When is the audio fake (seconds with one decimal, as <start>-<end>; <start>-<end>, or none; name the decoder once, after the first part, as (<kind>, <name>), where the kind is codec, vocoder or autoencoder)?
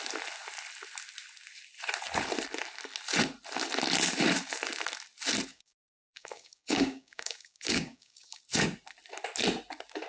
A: 5.5-8.4 (codec, DAC)